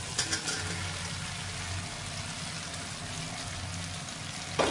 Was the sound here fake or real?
real